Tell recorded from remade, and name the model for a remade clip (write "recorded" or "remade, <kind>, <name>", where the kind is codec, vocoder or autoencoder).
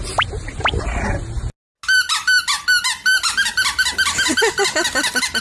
recorded